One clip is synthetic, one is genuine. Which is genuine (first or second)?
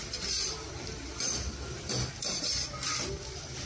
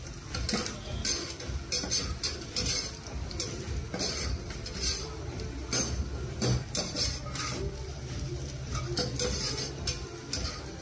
second